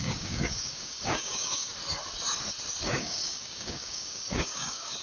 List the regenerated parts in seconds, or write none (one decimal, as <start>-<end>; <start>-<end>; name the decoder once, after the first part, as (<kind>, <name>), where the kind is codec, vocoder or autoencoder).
0.0-1.7 (codec, DAC); 2.8-5.0